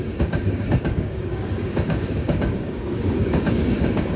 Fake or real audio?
fake